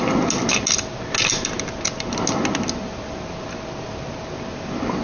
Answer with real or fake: real